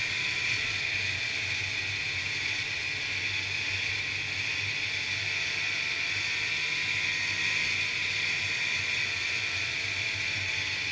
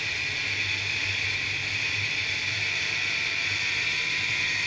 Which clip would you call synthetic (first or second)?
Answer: second